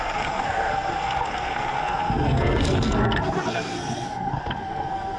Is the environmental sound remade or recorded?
remade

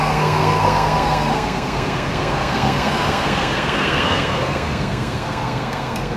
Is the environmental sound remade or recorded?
remade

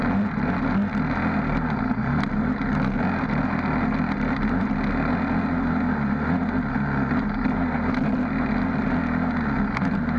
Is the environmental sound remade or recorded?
recorded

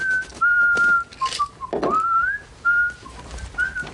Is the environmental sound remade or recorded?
recorded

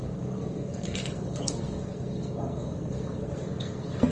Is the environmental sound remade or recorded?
remade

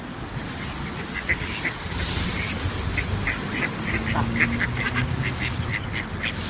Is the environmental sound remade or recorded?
recorded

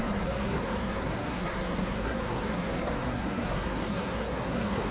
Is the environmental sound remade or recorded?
remade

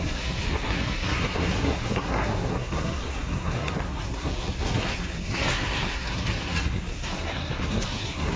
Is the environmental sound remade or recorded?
remade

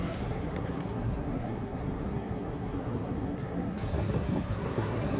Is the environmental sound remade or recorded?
remade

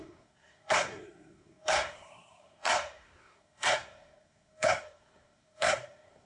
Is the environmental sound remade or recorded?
remade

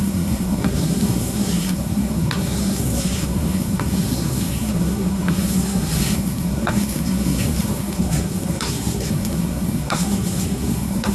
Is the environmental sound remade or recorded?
remade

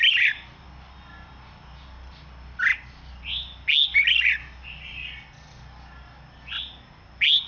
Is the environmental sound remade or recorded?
recorded